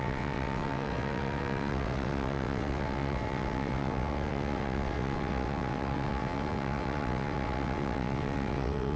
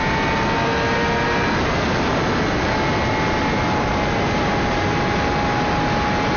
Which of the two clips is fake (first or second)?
first